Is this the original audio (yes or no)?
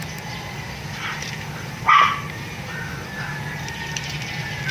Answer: no